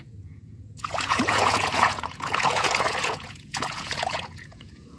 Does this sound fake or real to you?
fake